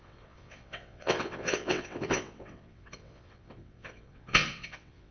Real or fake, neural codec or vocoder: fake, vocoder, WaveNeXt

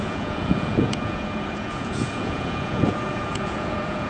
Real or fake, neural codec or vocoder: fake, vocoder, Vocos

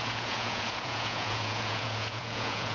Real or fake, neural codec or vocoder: fake, vocoder, Vocos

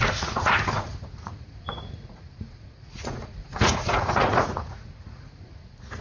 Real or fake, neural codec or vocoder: fake, vocoder, Vocos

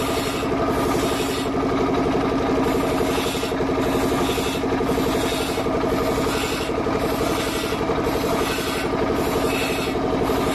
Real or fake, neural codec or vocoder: real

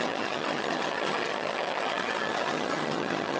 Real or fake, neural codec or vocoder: fake, vocoder, HiFi-GAN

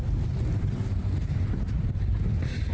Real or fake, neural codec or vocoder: real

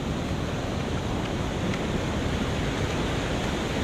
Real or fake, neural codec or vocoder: real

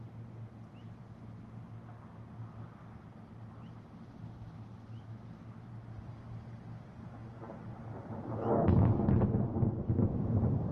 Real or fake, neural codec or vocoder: real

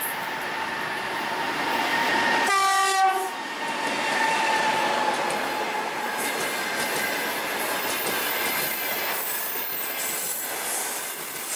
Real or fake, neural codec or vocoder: real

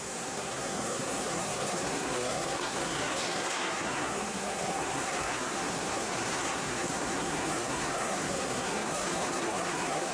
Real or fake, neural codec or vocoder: fake, codec, SNAC